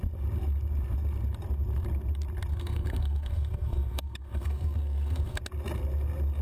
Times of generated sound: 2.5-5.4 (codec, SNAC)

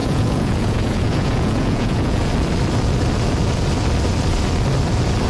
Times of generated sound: 0.0-2.3 (vocoder, Vocos)

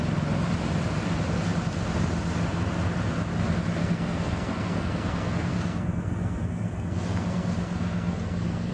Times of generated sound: 3.8-8.7 (codec, SNAC)

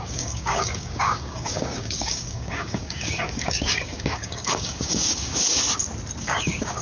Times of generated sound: 0.0-5.3 (codec, DAC); 6.2-6.8

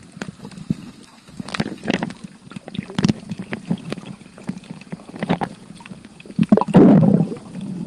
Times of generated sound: 1.8-6.5 (vocoder, BigVGAN v2)